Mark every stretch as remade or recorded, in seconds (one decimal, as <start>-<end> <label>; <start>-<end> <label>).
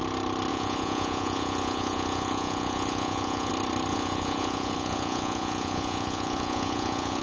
0.0-0.5 recorded; 0.5-3.5 remade; 3.5-3.9 recorded; 3.9-7.2 remade